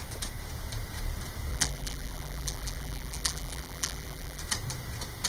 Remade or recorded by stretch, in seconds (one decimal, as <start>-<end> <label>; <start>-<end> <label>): 0.0-1.5 recorded; 1.5-4.4 remade; 4.4-5.3 recorded